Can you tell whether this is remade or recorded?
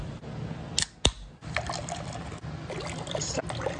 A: recorded